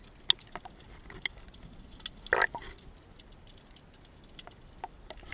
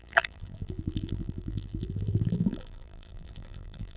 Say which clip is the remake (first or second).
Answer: second